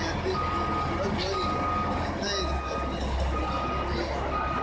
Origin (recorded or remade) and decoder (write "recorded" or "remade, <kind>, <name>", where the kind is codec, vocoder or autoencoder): recorded